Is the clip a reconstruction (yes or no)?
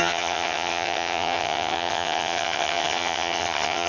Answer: yes